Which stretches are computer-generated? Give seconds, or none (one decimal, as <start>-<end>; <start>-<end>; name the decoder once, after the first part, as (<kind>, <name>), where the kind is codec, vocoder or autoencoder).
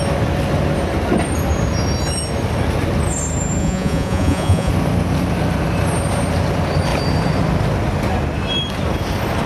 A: 3.6-4.7 (vocoder, Vocos)